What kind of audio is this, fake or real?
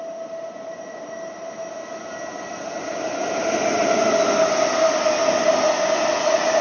real